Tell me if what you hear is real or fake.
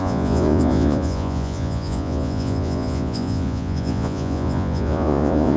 fake